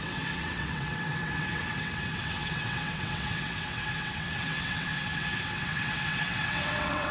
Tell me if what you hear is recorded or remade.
remade